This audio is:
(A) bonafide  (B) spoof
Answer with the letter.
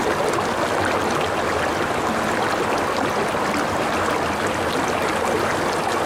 A